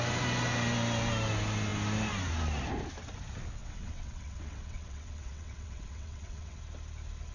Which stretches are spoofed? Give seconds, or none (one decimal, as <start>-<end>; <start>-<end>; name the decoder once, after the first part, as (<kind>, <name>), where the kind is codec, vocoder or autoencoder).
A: 3.6-6.6 (vocoder, WaveNeXt)